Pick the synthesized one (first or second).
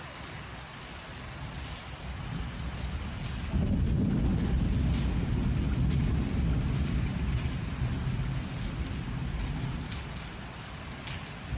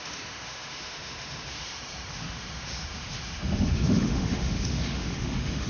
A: second